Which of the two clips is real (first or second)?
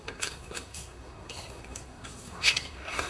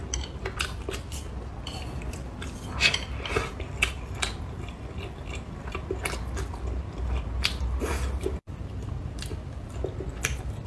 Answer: second